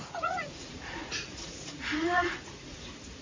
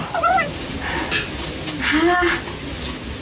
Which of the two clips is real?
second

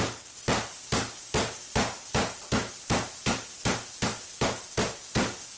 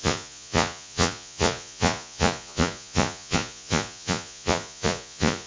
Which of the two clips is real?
first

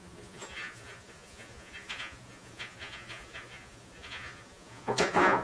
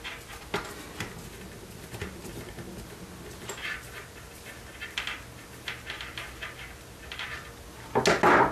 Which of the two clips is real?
second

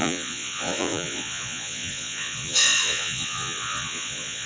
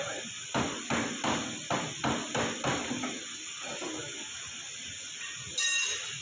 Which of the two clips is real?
second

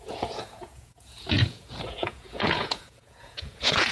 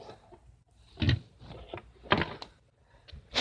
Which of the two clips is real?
second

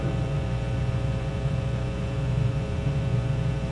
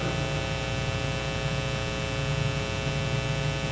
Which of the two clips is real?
second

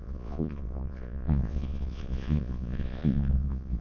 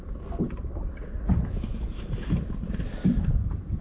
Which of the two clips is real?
second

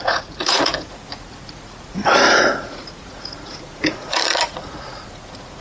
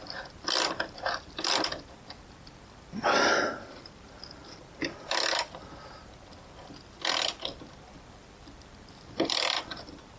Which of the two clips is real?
second